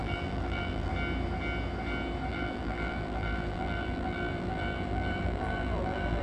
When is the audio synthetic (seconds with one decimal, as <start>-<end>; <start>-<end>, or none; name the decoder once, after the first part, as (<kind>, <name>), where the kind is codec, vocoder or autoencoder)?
0.0-0.9 (vocoder, BigVGAN v2); 2.3-6.2